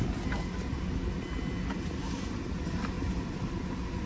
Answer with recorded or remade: recorded